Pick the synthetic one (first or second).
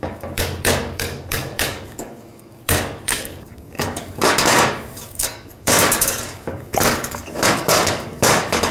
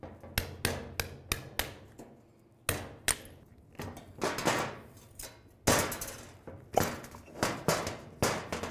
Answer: first